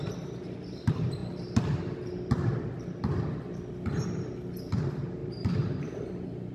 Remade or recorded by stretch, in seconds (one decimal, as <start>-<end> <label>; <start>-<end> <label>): 0.0-5.2 recorded; 5.2-6.1 remade; 6.1-6.5 recorded